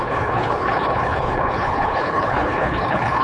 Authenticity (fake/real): fake